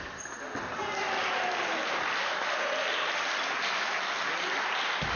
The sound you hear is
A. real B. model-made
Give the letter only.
A